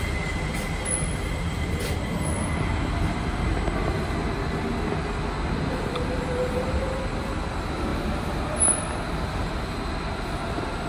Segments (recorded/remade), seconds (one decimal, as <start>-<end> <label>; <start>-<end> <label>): 0.0-10.9 recorded

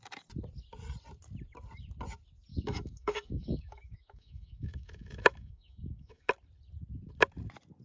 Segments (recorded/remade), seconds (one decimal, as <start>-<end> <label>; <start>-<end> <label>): 0.0-2.5 recorded; 2.5-6.3 remade; 6.3-7.8 recorded

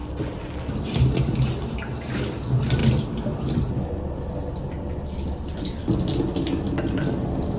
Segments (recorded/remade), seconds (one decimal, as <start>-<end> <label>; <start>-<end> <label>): 0.0-7.6 recorded

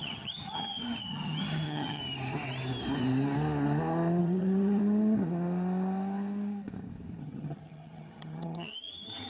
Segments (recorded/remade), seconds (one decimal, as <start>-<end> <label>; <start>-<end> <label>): 0.0-2.0 remade; 2.0-4.2 recorded; 4.2-4.8 remade; 4.8-7.2 recorded; 7.2-9.3 remade

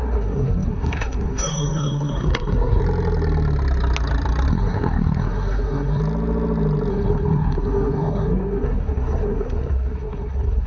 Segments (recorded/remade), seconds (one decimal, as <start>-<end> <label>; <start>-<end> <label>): 0.0-2.8 remade; 2.8-4.5 recorded; 4.5-6.0 remade; 6.0-6.9 recorded; 6.9-10.7 remade